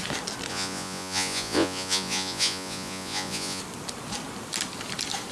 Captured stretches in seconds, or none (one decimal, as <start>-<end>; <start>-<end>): 0.0-0.5; 3.6-5.3